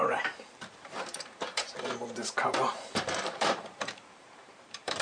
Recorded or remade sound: remade